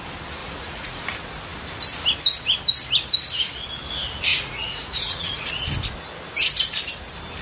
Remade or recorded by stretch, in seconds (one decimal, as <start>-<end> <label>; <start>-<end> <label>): 0.0-0.4 recorded; 0.4-1.0 remade; 1.0-4.3 recorded; 4.3-5.4 remade; 5.4-7.4 recorded